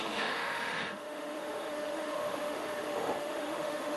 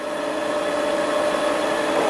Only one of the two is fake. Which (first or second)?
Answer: first